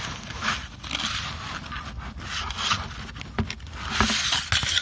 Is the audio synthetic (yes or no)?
no